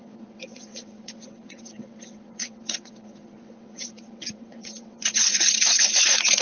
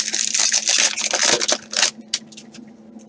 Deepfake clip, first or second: first